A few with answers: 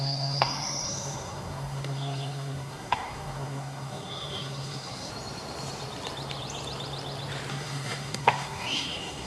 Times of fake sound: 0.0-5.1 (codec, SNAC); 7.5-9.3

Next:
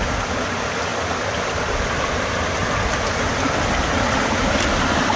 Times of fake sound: none

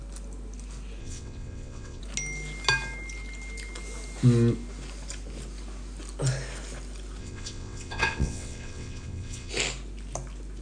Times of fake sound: 1.0-2.0 (vocoder, WaveNeXt); 7.2-9.5

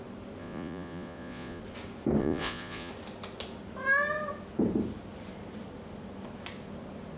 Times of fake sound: 0.4-1.6 (vocoder, Vocos); 2.2-2.9

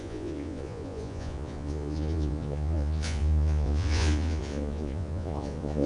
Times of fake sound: 0.0-5.9 (vocoder, Vocos)

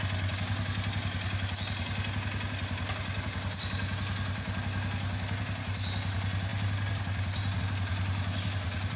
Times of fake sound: none

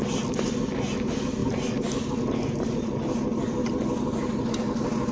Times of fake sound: none